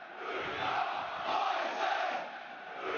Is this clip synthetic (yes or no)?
no